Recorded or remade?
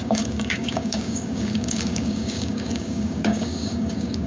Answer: remade